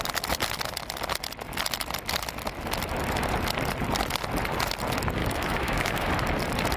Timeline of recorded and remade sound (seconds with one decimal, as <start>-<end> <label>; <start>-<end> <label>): 0.0-5.2 recorded; 5.2-6.1 remade; 6.1-6.8 recorded